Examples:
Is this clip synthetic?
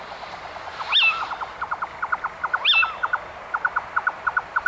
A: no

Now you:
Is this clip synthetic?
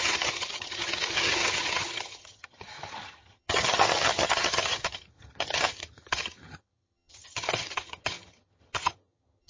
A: yes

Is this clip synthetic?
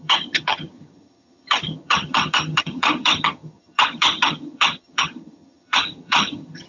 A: yes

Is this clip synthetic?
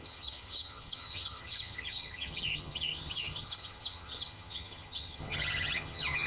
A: yes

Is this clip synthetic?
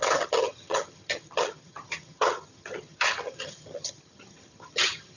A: yes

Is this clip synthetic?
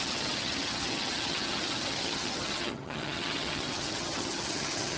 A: yes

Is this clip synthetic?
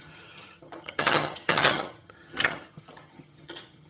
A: yes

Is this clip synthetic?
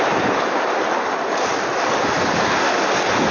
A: no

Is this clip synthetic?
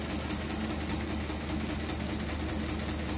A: no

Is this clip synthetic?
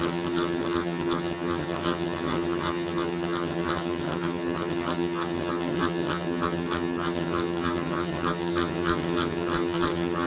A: yes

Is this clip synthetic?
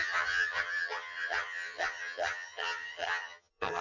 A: yes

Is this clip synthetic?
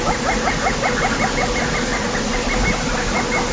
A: no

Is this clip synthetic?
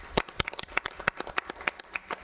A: no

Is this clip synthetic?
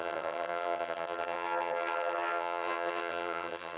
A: yes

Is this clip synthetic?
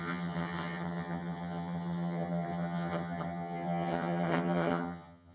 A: yes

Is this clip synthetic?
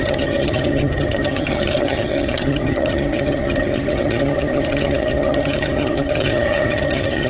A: yes